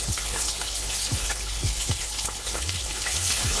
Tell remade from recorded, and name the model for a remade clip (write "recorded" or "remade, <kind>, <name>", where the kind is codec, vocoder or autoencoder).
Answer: remade, codec, HILCodec